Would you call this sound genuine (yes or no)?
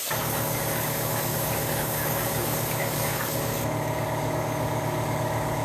no